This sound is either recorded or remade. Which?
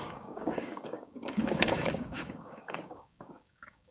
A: remade